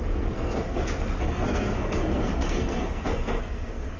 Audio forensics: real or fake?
fake